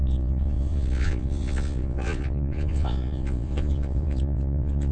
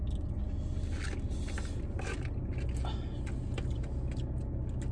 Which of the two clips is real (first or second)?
second